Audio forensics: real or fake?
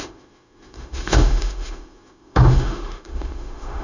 fake